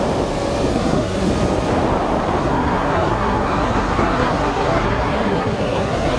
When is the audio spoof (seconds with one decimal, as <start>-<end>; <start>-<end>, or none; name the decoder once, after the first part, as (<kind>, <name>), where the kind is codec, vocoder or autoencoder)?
0.7-1.3 (codec, SNAC); 2.4-6.2